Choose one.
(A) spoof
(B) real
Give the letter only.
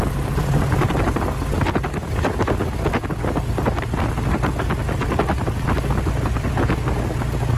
B